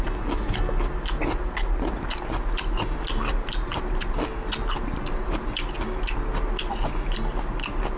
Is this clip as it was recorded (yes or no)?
yes